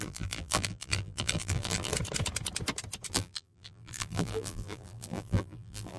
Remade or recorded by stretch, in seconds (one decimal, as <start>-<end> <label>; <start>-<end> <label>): 0.0-1.9 remade; 1.9-3.1 recorded; 3.1-6.0 remade